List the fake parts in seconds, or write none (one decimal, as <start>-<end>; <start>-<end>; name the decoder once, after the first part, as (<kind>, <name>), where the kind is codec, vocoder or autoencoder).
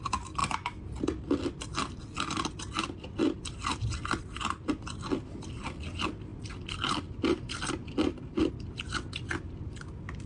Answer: none